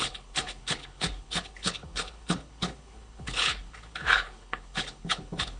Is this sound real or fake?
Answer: fake